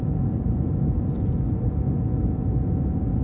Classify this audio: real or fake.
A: fake